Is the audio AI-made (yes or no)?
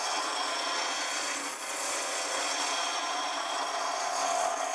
yes